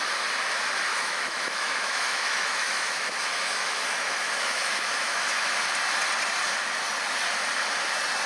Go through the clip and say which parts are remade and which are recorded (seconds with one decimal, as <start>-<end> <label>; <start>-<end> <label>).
0.0-0.9 recorded; 0.9-5.6 remade; 5.6-8.3 recorded